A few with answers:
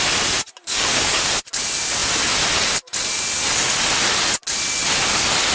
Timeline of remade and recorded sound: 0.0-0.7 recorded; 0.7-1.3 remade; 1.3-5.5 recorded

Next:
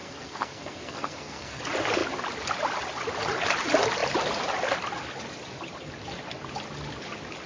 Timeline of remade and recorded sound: 0.0-1.6 remade; 1.6-7.5 recorded

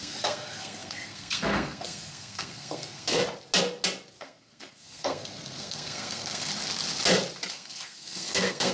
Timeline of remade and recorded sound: 0.0-3.2 remade; 3.2-4.2 recorded; 4.2-6.5 remade; 6.5-7.5 recorded; 7.5-8.7 remade

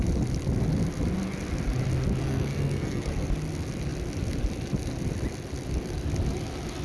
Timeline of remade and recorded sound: 0.0-2.2 recorded; 2.2-3.3 remade; 3.3-6.8 recorded

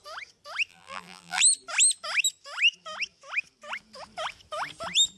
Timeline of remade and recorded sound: 0.0-0.7 recorded; 0.7-1.4 remade; 1.4-5.2 recorded